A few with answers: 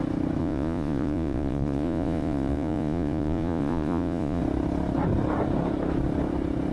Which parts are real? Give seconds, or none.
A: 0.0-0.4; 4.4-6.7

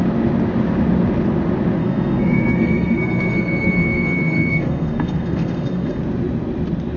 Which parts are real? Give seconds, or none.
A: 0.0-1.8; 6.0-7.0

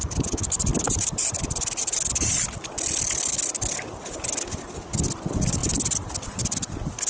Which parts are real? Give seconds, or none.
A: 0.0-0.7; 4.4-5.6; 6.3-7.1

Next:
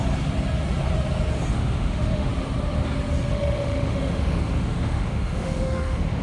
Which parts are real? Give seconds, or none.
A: 0.0-1.5; 2.3-3.3

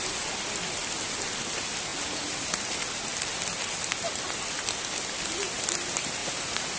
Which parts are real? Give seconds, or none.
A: 0.0-6.2